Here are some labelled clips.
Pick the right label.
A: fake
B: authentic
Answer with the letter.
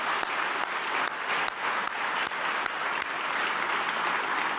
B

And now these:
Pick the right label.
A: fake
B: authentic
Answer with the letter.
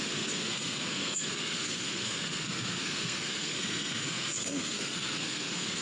A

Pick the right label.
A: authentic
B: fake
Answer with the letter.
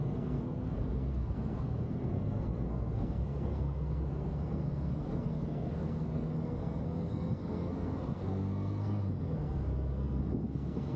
B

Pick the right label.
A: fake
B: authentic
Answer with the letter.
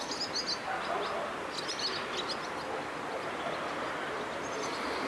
B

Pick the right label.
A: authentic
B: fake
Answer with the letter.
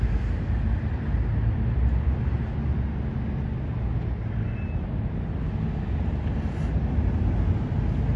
A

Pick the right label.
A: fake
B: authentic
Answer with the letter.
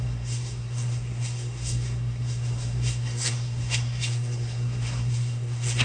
A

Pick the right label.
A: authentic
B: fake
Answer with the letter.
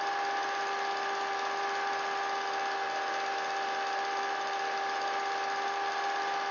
A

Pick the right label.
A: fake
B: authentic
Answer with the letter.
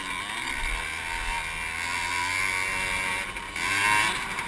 B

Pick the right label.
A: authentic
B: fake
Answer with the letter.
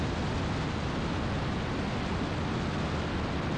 A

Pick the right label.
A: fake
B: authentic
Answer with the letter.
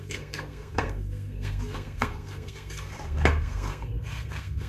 A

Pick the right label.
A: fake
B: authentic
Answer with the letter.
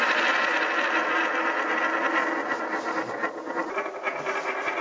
B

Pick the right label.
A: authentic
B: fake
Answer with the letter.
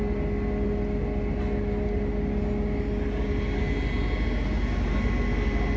A